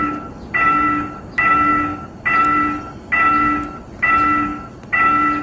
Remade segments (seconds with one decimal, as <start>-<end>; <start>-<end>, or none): none